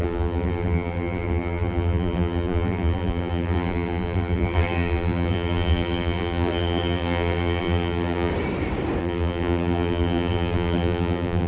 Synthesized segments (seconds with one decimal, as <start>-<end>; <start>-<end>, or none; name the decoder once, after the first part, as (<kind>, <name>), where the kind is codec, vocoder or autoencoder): 0.0-8.3 (vocoder, BigVGAN v2); 9.0-11.5